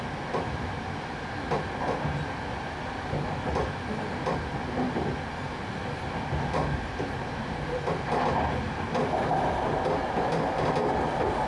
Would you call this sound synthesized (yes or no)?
no